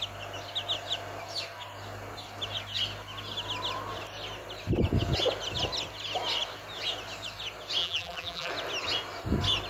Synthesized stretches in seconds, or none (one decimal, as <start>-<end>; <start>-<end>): 7.8-8.5